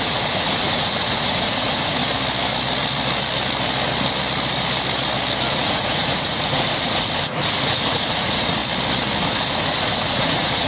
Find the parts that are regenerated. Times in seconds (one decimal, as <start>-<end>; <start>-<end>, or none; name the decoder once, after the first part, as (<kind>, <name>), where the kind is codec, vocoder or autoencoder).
0.0-2.0 (vocoder, Vocos); 5.5-8.6; 9.2-10.7